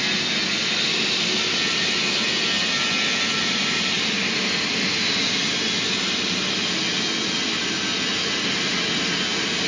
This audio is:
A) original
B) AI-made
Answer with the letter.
A